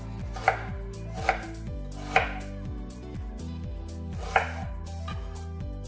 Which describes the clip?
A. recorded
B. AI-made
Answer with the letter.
A